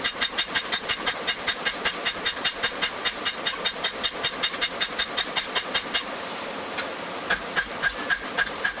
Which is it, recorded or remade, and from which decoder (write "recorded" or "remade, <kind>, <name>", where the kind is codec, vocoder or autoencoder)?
recorded